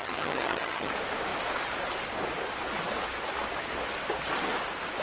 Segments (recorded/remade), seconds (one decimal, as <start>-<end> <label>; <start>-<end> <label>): 0.0-0.9 remade; 0.9-5.0 recorded